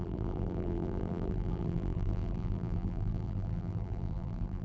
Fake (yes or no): yes